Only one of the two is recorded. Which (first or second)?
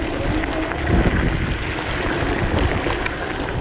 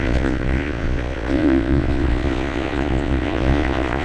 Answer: first